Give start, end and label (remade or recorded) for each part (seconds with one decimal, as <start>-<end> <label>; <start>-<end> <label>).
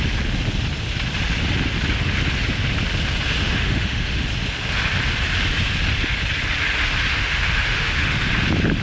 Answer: 0.0-3.4 recorded; 3.4-4.2 remade; 4.2-7.1 recorded; 7.1-8.3 remade; 8.3-8.8 recorded